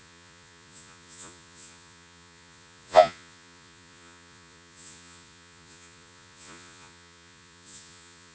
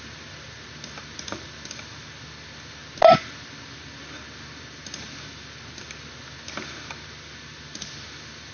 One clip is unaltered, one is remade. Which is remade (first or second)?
first